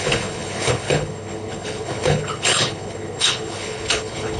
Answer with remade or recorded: remade